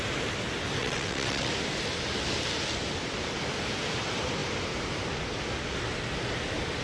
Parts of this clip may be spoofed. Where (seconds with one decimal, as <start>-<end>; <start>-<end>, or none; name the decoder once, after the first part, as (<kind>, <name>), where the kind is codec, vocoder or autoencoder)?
0.8-1.5 (vocoder, WaveNeXt)